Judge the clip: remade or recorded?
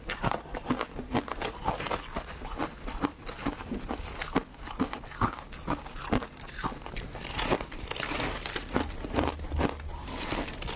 recorded